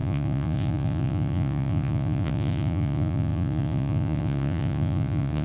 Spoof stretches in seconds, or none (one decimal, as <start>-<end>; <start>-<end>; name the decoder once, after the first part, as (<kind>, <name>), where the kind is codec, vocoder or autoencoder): 0.0-5.4 (vocoder, Vocos)